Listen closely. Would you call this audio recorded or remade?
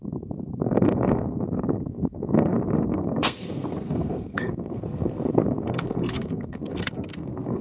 remade